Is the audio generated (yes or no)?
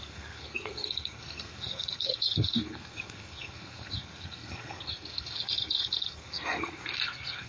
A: yes